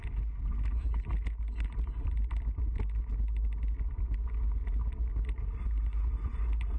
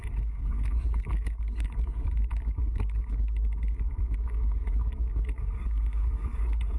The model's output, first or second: second